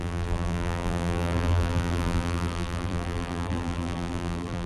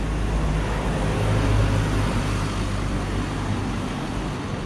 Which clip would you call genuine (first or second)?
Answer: second